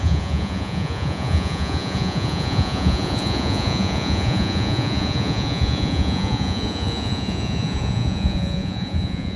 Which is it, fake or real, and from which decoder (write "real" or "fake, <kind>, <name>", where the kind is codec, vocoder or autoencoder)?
fake, vocoder, Vocos